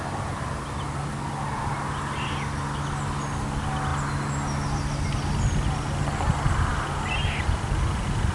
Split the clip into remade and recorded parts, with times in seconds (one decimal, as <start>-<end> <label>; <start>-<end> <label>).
0.0-8.3 recorded